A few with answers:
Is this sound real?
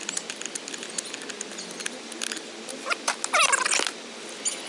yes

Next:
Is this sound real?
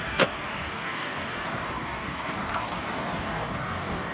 no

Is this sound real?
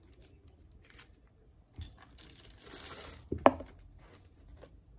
yes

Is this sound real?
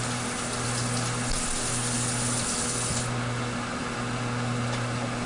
yes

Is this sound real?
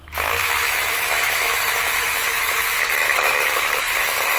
no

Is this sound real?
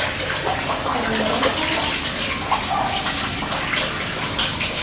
yes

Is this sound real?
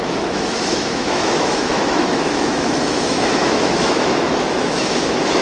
no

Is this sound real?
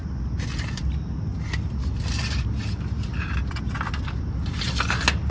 yes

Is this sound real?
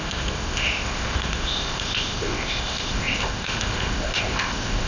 no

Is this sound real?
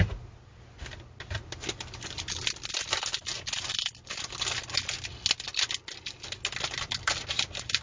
yes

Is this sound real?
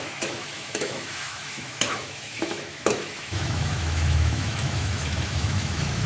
no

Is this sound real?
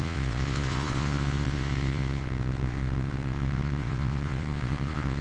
no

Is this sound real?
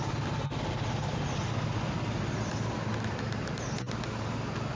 yes